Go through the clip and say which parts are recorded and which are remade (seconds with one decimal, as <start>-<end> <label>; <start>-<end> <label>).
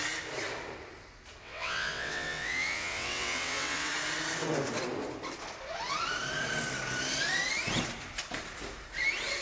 0.0-1.4 recorded; 1.4-3.9 remade; 3.9-9.4 recorded